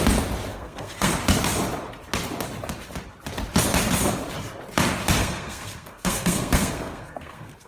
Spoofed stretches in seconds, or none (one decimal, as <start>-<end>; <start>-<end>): 0.5-1.1; 5.2-7.7